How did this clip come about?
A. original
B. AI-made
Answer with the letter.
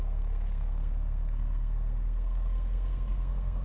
B